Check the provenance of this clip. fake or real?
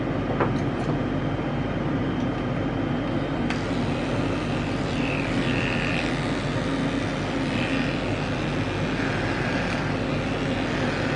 real